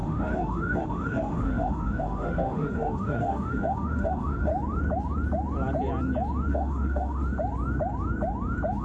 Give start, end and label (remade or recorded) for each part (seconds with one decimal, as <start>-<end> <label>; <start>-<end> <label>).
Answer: 0.0-4.5 remade; 4.5-6.5 recorded; 6.5-7.2 remade; 7.2-8.8 recorded